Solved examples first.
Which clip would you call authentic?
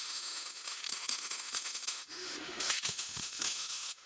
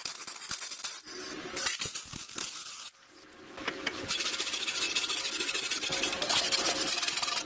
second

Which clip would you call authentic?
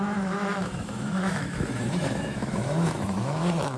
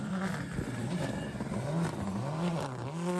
second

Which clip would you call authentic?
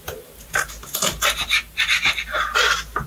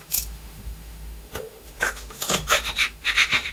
first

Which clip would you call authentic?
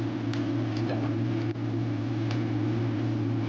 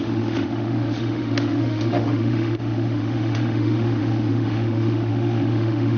first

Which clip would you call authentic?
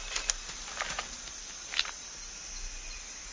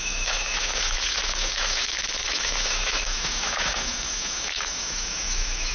first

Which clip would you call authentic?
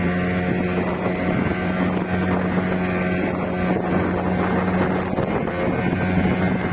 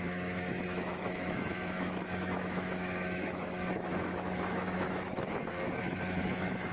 first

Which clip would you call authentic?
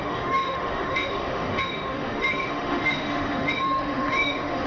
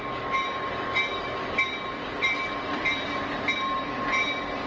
second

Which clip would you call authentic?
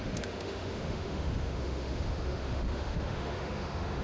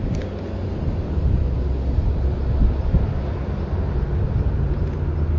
second